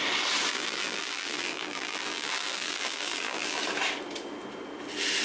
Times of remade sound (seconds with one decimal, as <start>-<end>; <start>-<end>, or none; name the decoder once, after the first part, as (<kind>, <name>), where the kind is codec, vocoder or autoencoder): 0.5-3.6 (vocoder, BigVGAN v2)